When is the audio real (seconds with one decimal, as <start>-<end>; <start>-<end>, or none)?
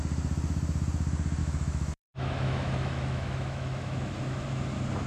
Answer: 0.0-1.4; 4.5-5.1